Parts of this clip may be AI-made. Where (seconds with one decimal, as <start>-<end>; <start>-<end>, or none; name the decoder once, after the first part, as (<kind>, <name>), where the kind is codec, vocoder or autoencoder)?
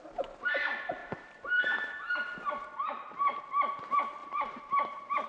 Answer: 1.0-3.4 (vocoder, BigVGAN v2); 4.2-5.3